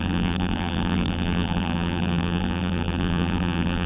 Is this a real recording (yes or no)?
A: no